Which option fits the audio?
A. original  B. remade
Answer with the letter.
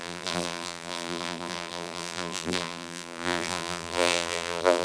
B